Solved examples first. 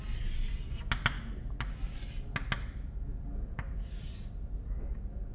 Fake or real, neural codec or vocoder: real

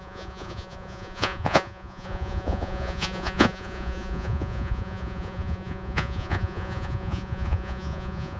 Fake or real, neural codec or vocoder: fake, vocoder, Vocos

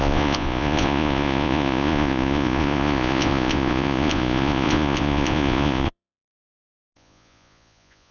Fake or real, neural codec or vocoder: fake, vocoder, Vocos